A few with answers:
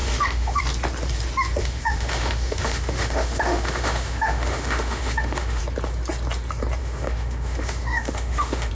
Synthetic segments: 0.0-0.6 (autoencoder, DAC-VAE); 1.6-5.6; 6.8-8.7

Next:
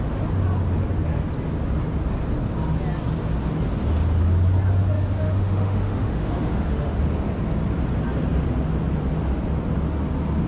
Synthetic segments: 5.2-7.0 (autoencoder, DAC-VAE)

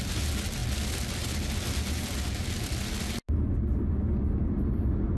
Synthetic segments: none

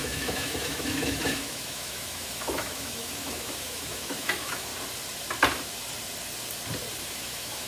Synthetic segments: 0.0-4.7 (autoencoder, DAC-VAE); 7.0-7.7

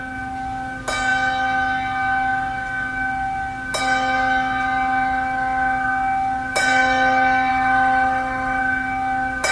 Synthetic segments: 7.5-8.6 (autoencoder, DAC-VAE)